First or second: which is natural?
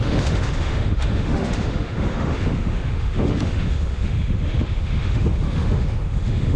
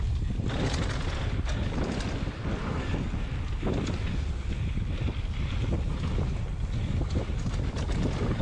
second